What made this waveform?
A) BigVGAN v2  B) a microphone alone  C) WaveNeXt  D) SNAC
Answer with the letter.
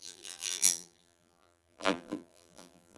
A